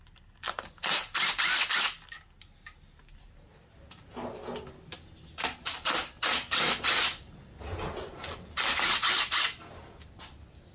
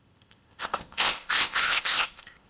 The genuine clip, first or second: first